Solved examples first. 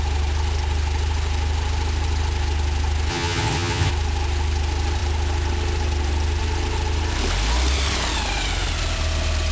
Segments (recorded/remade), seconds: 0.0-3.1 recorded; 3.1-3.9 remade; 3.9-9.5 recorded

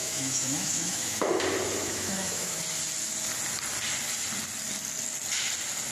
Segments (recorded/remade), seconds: 0.0-1.3 remade; 1.3-1.8 recorded; 1.8-2.6 remade; 2.6-5.9 recorded

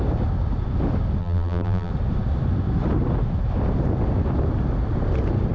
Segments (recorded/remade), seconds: 0.0-1.2 recorded; 1.2-1.9 remade; 1.9-5.5 recorded

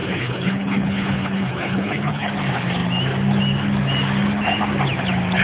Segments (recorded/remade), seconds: 0.0-2.3 remade; 2.3-5.4 recorded

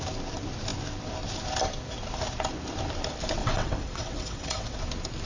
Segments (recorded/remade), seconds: 0.0-3.4 recorded; 3.4-4.8 remade; 4.8-5.3 recorded

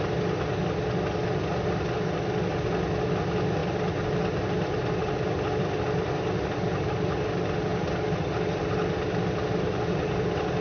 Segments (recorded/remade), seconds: 0.0-10.6 recorded

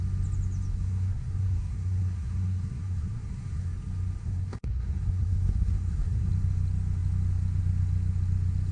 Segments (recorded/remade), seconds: 0.0-0.7 recorded; 0.7-3.7 remade; 3.7-4.2 recorded; 4.2-6.3 remade; 6.3-8.7 recorded

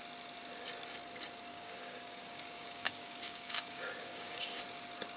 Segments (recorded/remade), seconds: 0.0-1.5 recorded; 1.5-4.6 remade; 4.6-5.2 recorded